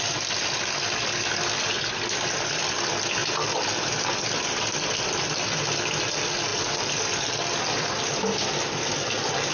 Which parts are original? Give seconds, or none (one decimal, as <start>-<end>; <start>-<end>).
0.0-9.5

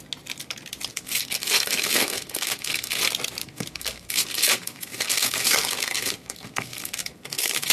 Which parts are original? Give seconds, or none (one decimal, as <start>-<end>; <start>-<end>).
0.0-0.9; 3.0-3.4

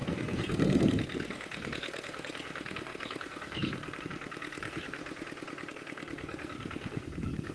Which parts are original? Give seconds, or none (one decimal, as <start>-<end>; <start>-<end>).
5.0-5.7

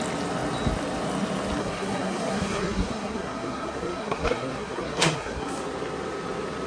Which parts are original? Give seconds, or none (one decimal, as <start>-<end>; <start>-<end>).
0.0-1.6; 5.6-6.7

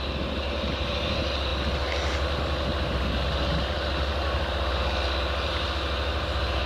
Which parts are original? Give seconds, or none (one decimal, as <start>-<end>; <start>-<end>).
0.0-6.7